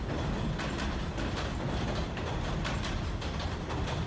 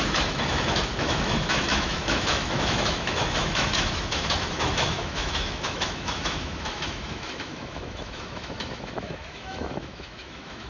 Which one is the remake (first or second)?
second